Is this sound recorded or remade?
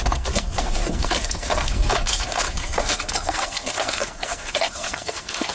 remade